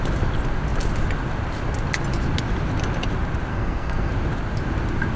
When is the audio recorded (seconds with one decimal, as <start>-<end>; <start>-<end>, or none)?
0.0-3.5; 4.1-5.2